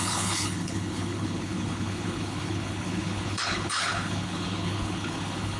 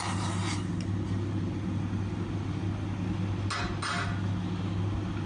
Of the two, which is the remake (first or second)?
first